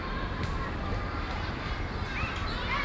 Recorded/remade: recorded